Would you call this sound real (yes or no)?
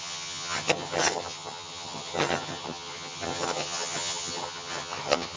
no